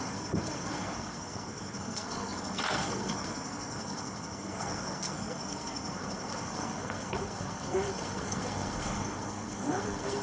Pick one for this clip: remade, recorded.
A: remade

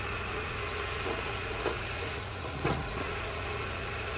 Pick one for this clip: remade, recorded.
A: remade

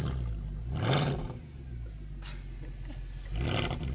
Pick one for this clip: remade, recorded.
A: recorded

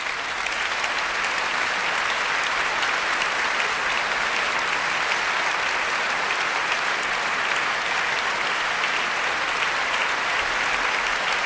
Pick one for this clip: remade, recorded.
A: recorded